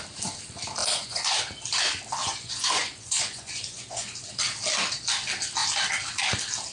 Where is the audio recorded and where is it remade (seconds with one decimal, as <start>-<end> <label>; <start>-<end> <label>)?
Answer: 0.0-0.8 recorded; 0.8-1.4 remade; 1.4-2.2 recorded; 2.2-4.3 remade; 4.3-6.7 recorded